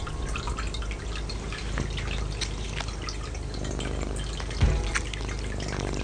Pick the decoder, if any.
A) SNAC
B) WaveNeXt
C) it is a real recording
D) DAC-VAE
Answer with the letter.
C